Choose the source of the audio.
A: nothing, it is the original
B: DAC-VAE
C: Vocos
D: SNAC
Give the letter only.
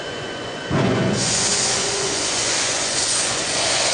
C